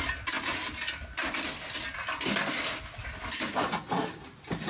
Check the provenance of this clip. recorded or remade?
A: recorded